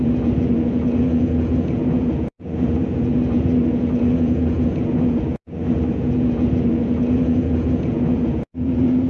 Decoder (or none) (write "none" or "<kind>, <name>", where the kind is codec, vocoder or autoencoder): vocoder, Vocos